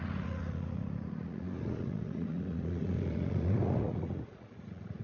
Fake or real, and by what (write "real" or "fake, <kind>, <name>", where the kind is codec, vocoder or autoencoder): fake, vocoder, Vocos